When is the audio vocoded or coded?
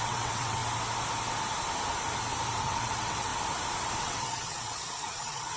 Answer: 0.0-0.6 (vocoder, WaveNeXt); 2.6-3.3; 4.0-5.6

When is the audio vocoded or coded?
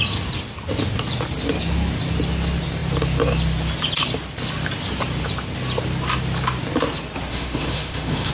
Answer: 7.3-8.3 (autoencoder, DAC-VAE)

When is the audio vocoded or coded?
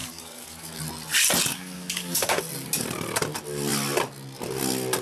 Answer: 0.0-0.8 (codec, DAC); 1.5-2.4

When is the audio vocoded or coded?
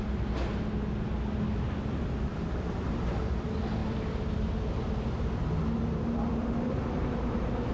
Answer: 2.3-3.0 (vocoder, BigVGAN v2); 3.8-6.8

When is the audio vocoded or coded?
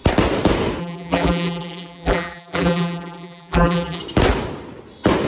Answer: 0.8-4.0 (vocoder, BigVGAN v2)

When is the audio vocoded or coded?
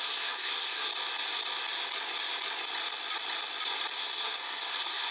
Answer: 0.0-0.9 (codec, SNAC); 4.0-5.1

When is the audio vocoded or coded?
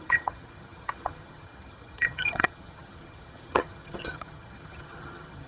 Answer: 0.0-5.5 (vocoder, HiFi-GAN)